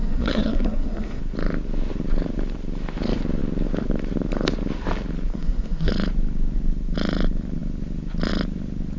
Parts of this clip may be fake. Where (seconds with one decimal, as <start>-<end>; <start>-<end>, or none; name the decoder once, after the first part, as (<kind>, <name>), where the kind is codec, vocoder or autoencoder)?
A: 0.0-1.2 (codec, SNAC); 5.3-5.9